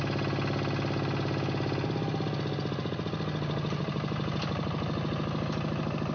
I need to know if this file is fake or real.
real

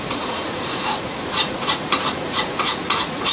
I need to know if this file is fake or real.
fake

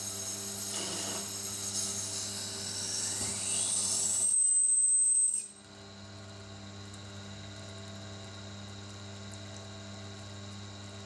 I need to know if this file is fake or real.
real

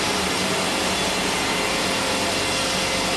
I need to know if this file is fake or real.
real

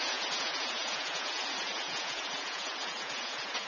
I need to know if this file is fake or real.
fake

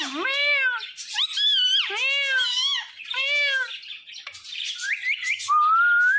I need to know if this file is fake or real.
real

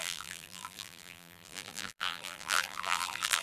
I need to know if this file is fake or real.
fake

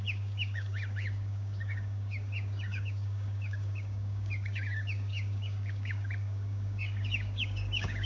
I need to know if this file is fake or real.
fake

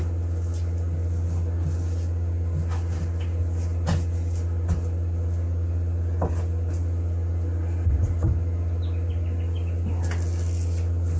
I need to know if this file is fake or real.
real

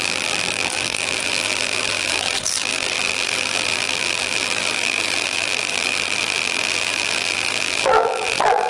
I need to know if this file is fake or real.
fake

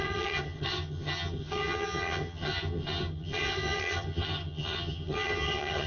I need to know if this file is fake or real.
fake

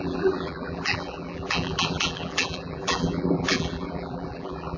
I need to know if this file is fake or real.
fake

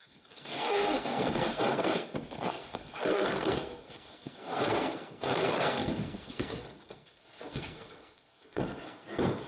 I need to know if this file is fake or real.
fake